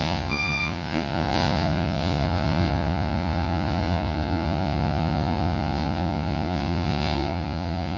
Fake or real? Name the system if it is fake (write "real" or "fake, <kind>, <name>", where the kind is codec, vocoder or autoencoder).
fake, vocoder, Vocos